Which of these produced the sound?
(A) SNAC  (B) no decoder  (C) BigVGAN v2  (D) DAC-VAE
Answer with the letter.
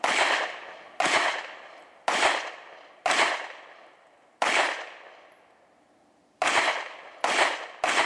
B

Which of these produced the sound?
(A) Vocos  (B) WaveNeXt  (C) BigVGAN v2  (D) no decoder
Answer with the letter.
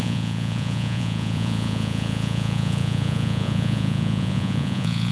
A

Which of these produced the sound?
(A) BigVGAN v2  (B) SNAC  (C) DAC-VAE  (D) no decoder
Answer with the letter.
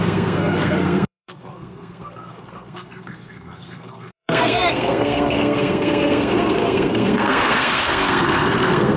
B